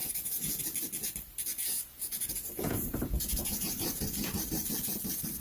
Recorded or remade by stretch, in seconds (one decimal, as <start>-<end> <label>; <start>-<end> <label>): 0.0-0.6 remade; 0.6-1.5 recorded; 1.5-4.4 remade; 4.4-5.4 recorded